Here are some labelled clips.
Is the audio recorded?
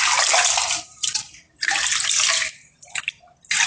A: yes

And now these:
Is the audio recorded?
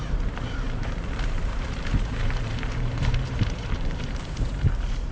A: no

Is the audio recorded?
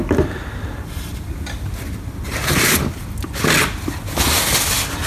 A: yes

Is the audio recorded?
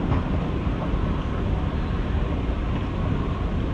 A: yes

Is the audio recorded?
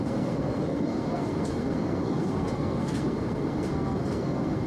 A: no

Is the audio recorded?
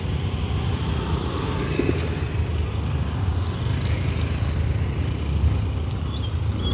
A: yes